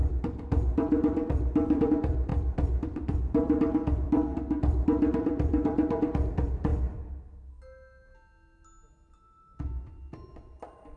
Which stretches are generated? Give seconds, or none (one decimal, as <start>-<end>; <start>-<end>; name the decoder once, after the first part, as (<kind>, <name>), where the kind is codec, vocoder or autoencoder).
0.0-6.7 (vocoder, BigVGAN v2); 10.3-11.0